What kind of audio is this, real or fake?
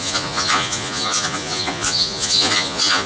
fake